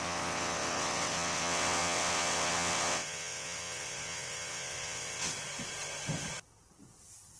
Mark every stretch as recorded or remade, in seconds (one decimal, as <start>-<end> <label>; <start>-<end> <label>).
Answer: 0.0-5.3 remade; 5.3-7.4 recorded